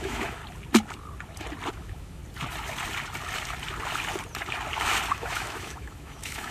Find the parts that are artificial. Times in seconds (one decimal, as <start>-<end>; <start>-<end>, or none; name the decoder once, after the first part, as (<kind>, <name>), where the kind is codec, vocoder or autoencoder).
0.0-0.4 (autoencoder, DAC-VAE); 1.7-2.2; 5.1-6.5

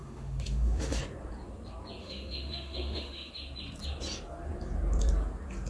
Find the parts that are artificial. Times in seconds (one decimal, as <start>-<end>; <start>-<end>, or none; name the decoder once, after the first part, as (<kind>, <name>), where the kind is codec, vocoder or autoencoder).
0.0-1.0 (autoencoder, DAC-VAE); 2.0-3.3